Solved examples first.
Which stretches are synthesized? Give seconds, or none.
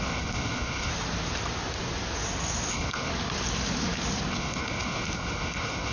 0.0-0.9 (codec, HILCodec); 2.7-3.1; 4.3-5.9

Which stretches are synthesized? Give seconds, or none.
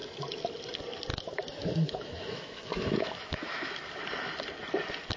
1.1-4.0 (autoencoder, DAC-VAE)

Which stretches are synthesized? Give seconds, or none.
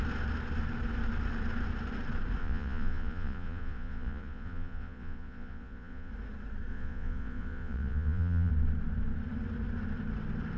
2.4-6.1 (vocoder, Vocos); 6.7-8.5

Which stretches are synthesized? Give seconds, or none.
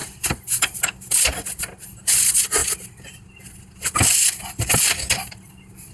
none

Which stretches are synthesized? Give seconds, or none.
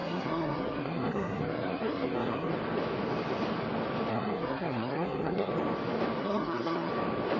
0.0-2.5 (codec, SNAC); 4.1-5.5; 6.2-6.9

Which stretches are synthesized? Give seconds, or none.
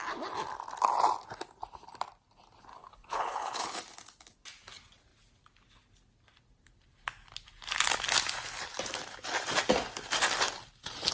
2.7-3.8 (codec, HILCodec)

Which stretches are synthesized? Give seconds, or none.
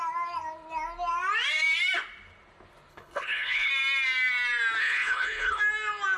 2.9-3.7 (codec, HILCodec); 4.8-5.6